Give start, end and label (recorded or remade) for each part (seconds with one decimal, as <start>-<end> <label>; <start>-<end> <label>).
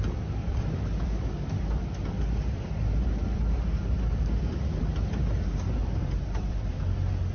0.0-0.4 recorded; 0.4-4.8 remade; 4.8-5.8 recorded; 5.8-6.8 remade; 6.8-7.3 recorded